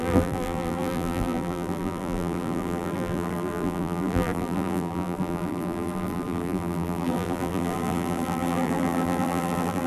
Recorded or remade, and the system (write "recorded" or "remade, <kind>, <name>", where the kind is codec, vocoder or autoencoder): remade, vocoder, BigVGAN v2